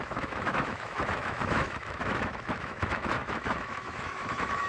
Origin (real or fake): fake